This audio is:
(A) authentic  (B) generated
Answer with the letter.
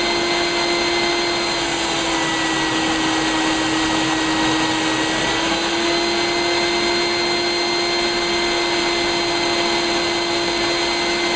A